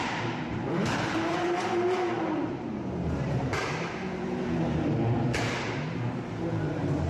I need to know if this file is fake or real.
fake